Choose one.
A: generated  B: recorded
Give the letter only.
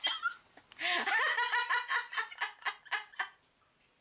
B